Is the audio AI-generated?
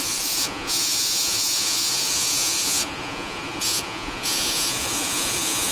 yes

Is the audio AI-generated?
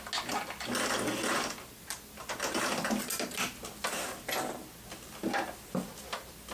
no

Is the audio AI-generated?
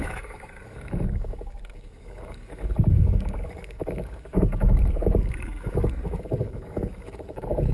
yes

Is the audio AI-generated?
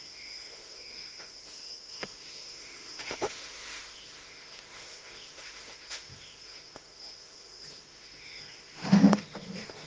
yes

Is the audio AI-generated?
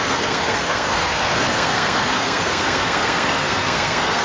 yes